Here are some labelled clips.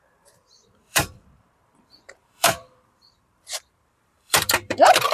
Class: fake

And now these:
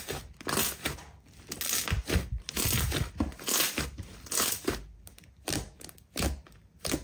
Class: real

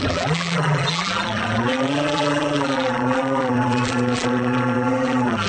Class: fake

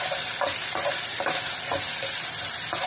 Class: fake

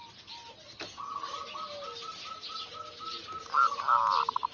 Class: real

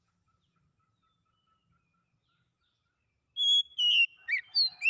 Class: real